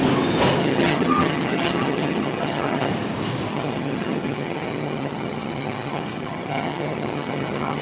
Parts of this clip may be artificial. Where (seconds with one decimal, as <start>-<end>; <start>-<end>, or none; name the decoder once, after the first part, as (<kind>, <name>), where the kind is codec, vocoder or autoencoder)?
0.6-2.9 (vocoder, HiFi-GAN); 3.5-7.8